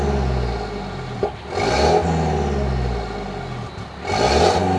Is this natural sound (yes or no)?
yes